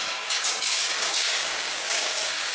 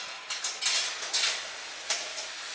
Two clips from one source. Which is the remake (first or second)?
first